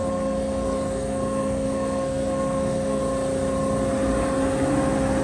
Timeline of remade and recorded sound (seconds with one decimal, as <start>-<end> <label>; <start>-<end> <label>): 0.0-3.0 remade; 3.0-5.2 recorded